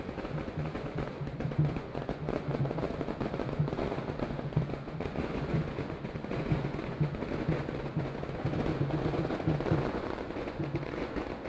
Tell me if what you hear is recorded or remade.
remade